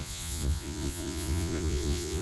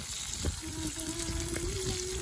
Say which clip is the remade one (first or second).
first